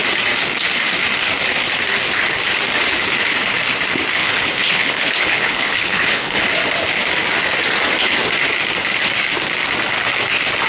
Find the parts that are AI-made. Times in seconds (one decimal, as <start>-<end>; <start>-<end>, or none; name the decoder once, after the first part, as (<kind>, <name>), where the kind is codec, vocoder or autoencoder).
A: 4.2-6.4 (codec, HILCodec)